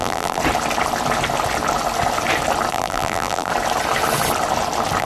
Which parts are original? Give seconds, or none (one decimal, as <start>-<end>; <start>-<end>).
0.4-2.7; 3.5-5.0